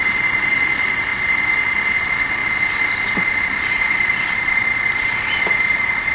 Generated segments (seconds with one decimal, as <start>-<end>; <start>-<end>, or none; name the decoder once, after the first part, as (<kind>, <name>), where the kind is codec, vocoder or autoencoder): 0.0-1.1 (vocoder, BigVGAN v2); 2.0-2.4; 3.4-6.1